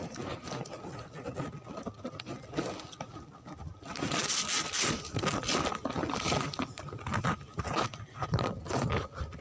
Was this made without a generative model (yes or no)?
yes